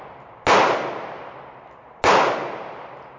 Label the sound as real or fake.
real